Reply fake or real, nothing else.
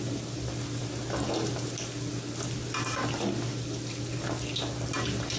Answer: real